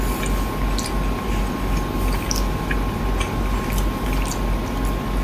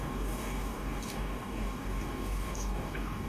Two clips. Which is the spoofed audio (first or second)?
second